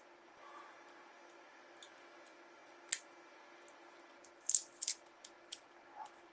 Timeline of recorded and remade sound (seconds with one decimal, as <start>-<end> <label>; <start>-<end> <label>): 0.0-6.3 recorded